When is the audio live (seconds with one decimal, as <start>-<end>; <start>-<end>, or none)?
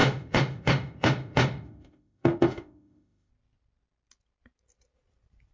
3.3-5.5